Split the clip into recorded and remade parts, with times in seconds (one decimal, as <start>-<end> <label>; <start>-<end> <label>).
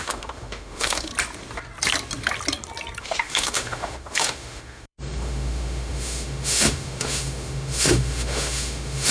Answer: 0.0-1.1 remade; 1.1-3.0 recorded; 3.0-9.1 remade